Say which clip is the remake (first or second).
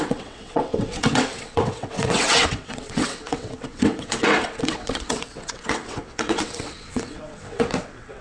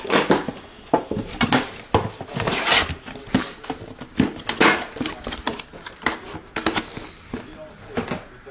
first